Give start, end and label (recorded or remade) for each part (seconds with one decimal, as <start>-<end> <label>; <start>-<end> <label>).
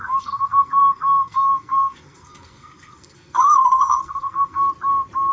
0.0-4.6 remade; 4.6-5.3 recorded